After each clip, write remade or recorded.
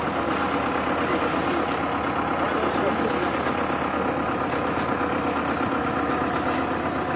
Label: recorded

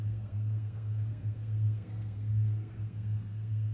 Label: remade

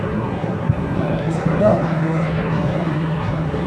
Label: remade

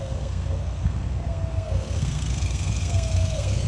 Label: remade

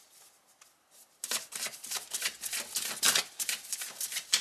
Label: recorded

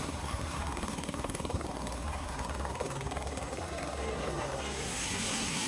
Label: remade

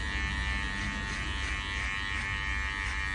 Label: recorded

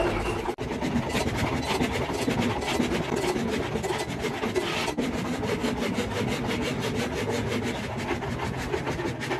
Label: recorded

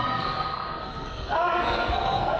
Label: remade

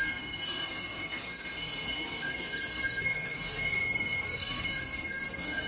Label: remade